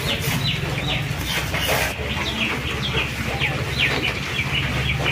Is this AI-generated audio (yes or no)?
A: no